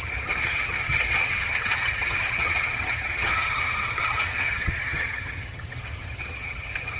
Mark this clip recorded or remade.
remade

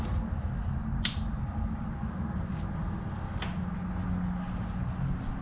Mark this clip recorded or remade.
recorded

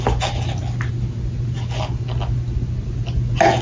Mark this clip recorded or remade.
recorded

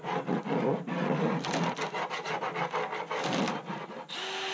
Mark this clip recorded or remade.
recorded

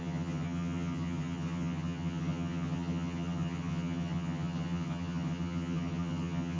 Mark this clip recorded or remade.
remade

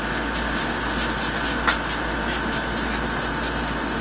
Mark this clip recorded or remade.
recorded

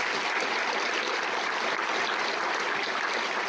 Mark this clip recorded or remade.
recorded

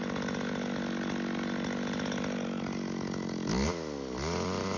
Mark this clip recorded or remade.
recorded